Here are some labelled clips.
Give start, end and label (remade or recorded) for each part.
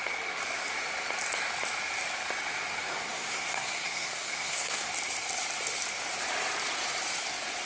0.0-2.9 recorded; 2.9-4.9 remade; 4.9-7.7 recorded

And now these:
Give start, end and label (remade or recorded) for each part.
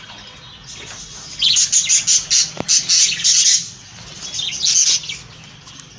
0.0-6.0 recorded